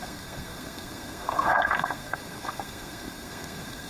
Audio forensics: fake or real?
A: fake